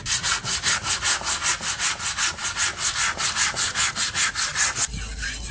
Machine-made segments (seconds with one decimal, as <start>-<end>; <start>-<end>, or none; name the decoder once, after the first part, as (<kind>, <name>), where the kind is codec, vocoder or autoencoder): none